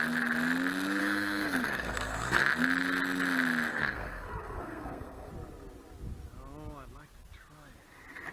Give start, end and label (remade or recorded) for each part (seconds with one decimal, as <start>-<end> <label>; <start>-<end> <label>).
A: 0.0-1.0 recorded; 1.0-2.4 remade; 2.4-3.7 recorded; 3.7-5.3 remade; 5.3-8.3 recorded